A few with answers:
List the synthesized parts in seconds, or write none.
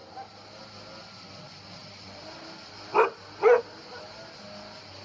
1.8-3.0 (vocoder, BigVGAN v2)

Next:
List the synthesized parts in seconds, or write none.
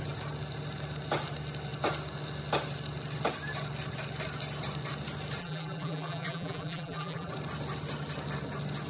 5.4-7.3 (vocoder, BigVGAN v2)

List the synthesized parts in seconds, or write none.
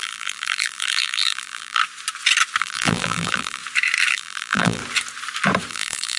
0.0-1.8 (vocoder, BigVGAN v2); 2.6-3.6; 4.1-4.8; 5.7-6.2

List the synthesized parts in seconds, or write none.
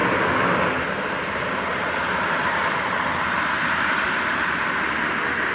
1.7-5.0 (vocoder, BigVGAN v2)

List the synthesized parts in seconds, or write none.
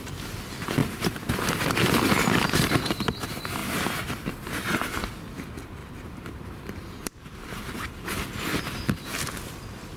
0.8-1.3 (vocoder, BigVGAN v2); 3.6-4.3; 5.8-7.6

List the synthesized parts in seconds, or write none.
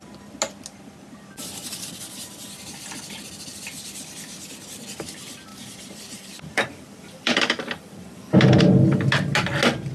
5.5-8.6 (vocoder, BigVGAN v2)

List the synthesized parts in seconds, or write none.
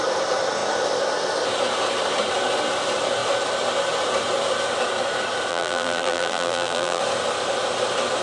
5.5-7.0 (vocoder, BigVGAN v2)